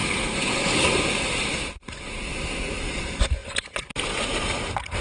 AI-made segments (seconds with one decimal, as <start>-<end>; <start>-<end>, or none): none

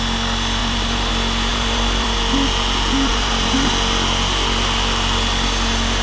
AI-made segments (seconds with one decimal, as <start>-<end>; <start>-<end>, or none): 0.6-1.1; 1.5-2.2; 3.1-3.7

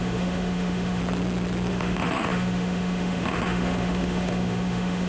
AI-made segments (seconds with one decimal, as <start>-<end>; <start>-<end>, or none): 0.0-1.0; 1.7-5.1

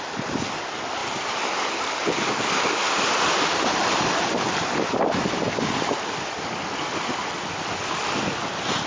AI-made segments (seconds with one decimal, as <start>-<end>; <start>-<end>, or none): none